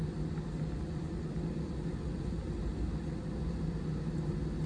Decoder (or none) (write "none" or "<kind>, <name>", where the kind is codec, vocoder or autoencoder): none